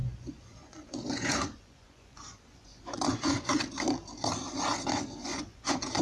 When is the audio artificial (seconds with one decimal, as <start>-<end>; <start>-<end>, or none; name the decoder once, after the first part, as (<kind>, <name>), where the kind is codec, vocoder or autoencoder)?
0.0-3.6 (vocoder, Vocos); 5.2-6.0